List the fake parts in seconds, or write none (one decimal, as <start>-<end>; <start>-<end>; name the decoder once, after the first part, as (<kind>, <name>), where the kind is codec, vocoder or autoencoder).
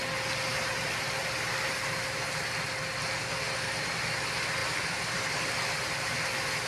0.5-1.5 (vocoder, BigVGAN v2); 4.6-5.2